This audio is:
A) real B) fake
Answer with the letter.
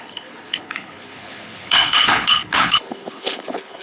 B